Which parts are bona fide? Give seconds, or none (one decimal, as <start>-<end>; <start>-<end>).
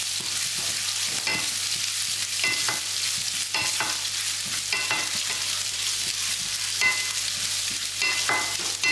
0.0-8.9